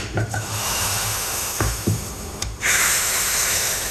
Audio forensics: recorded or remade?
remade